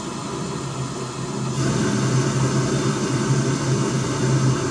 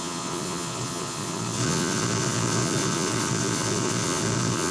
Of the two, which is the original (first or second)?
first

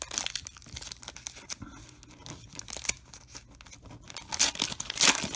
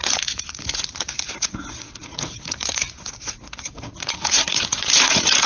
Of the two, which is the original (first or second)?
first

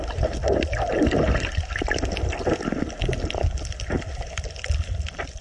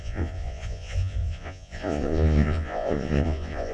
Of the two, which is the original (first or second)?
first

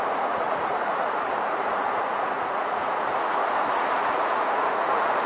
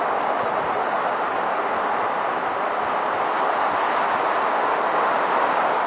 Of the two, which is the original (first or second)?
second